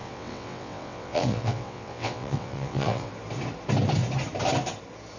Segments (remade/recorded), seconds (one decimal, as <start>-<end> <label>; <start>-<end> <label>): 0.0-3.1 remade; 3.1-5.2 recorded